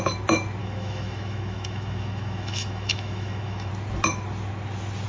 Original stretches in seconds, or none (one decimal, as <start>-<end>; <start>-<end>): 0.0-0.6; 3.7-5.1